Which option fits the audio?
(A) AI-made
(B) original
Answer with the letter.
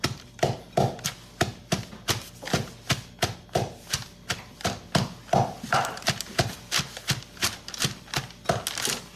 B